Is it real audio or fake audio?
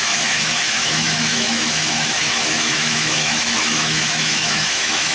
fake